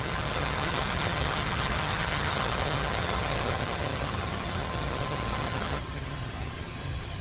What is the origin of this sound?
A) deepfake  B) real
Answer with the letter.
A